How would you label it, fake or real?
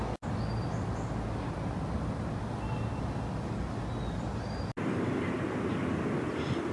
real